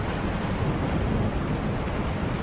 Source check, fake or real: real